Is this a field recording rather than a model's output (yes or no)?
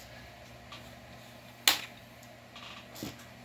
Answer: yes